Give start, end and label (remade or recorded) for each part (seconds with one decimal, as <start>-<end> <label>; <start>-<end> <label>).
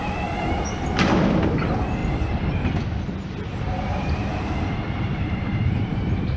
0.0-0.7 remade; 0.7-3.5 recorded; 3.5-4.2 remade; 4.2-5.1 recorded; 5.1-5.9 remade; 5.9-6.4 recorded